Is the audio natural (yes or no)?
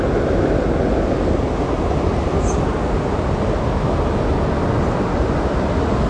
yes